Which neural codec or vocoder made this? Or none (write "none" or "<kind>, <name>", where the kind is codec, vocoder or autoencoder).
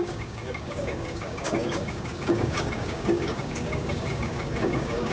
codec, DAC